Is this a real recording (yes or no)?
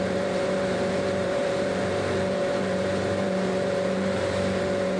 no